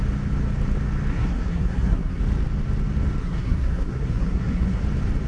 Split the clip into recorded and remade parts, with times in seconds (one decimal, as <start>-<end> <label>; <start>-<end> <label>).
0.0-1.1 recorded; 1.1-2.2 remade; 2.2-3.2 recorded; 3.2-4.8 remade; 4.8-5.3 recorded

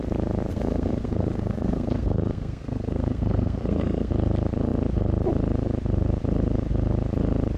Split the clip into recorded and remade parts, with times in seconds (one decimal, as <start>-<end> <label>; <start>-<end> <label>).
0.0-0.5 recorded; 0.5-4.1 remade; 4.1-7.6 recorded